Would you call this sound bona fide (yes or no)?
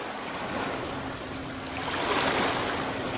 yes